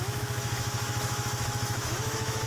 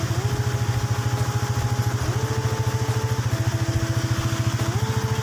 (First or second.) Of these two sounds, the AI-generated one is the first